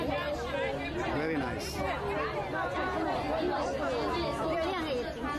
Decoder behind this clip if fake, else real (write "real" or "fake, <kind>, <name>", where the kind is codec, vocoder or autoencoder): real